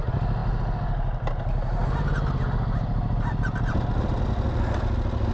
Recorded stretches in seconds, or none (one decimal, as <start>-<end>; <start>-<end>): 0.0-5.3